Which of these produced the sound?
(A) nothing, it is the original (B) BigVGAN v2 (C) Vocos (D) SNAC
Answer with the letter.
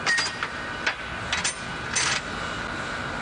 A